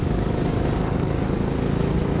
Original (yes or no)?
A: no